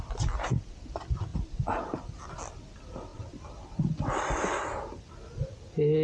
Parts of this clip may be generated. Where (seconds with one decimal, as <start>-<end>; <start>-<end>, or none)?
1.3-2.3; 3.1-3.8